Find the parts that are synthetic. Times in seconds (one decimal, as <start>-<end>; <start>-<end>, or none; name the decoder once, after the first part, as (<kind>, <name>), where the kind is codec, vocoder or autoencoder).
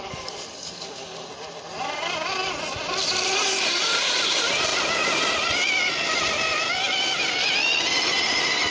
none